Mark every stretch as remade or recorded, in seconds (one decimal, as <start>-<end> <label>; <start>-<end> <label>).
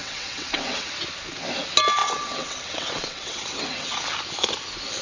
0.0-0.9 remade; 0.9-2.0 recorded; 2.0-4.0 remade; 4.0-5.0 recorded